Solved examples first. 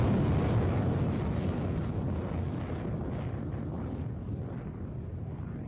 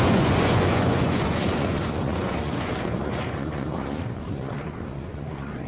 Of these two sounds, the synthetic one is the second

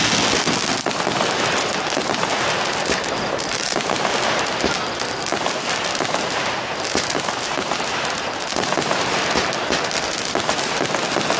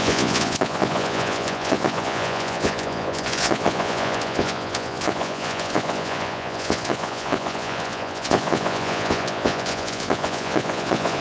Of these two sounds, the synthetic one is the second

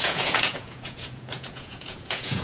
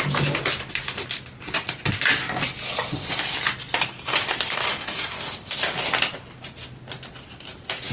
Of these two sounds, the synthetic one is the first